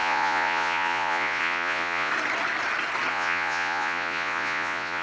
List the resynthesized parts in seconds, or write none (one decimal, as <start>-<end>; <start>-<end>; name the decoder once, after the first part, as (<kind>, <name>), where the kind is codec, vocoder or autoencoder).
0.0-2.1 (vocoder, Vocos); 3.1-5.0